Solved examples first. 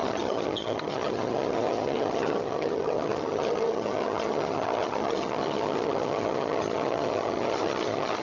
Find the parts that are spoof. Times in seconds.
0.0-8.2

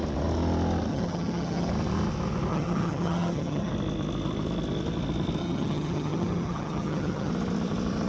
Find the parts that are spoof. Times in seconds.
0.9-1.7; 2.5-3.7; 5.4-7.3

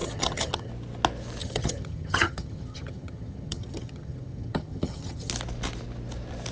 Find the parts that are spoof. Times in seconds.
0.0-0.7; 1.4-5.3

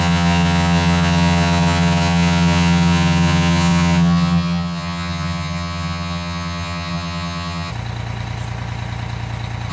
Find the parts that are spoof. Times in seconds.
0.0-7.7

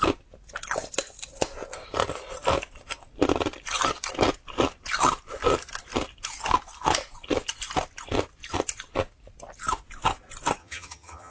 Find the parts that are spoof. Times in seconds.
10.6-11.3

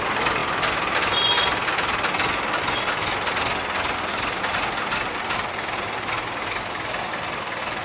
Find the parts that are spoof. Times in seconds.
none

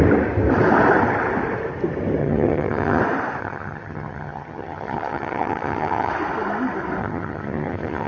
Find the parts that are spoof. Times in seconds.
2.2-3.0; 3.4-6.1; 7.0-8.1

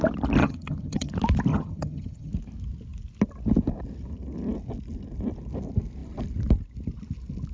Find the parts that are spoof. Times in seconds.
0.4-1.1; 1.5-2.3